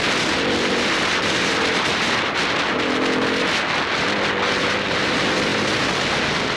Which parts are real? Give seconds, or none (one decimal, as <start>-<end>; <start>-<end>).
0.0-6.6